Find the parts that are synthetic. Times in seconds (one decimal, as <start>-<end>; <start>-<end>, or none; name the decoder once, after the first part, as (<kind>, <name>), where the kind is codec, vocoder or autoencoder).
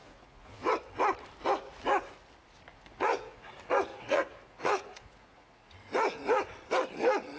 0.0-0.7 (vocoder, Vocos); 2.7-3.5; 3.9-5.7